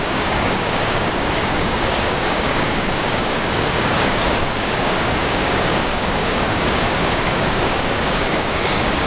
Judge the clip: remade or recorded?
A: remade